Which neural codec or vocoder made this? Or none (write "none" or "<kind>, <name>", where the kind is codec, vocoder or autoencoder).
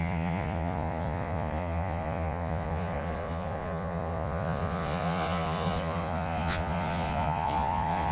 vocoder, Vocos